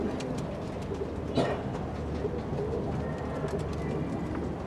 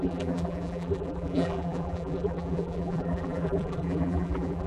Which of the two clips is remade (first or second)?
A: second